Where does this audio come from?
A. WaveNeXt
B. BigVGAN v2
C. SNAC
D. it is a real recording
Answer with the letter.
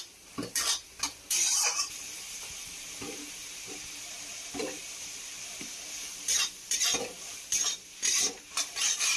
B